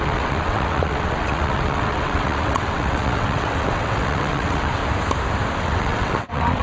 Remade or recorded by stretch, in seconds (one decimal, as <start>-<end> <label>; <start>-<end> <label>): 0.0-4.8 remade; 4.8-5.6 recorded; 5.6-6.6 remade